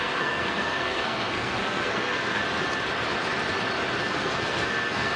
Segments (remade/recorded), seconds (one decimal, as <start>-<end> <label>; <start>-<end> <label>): 0.0-2.4 remade; 2.4-4.0 recorded; 4.0-5.2 remade